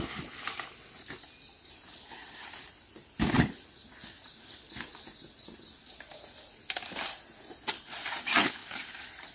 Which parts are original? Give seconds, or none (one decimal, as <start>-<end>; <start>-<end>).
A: 0.0-9.3